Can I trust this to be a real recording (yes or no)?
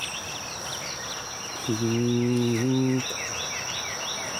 yes